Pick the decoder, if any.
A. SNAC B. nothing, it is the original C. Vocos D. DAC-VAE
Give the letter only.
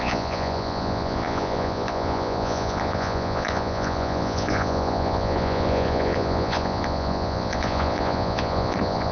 C